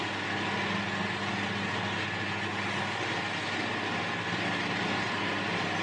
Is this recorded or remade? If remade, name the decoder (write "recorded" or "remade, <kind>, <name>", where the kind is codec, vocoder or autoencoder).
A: recorded